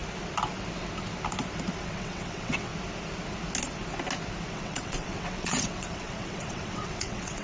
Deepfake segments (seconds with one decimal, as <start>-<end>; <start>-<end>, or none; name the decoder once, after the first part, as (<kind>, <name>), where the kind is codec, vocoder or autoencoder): 1.8-2.7 (vocoder, WaveNeXt); 4.5-7.4